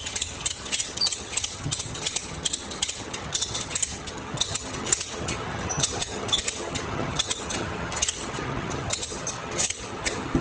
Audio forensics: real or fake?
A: fake